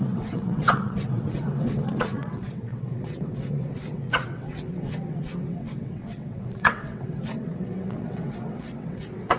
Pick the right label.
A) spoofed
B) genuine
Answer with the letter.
A